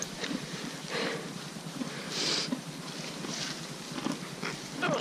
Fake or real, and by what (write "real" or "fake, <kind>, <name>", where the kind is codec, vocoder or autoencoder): fake, vocoder, BigVGAN v2